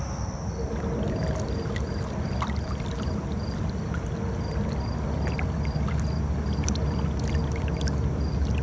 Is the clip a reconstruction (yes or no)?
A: no